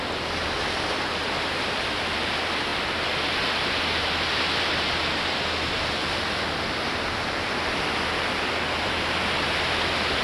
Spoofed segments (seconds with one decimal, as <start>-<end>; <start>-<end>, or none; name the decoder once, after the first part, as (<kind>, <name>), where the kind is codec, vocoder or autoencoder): none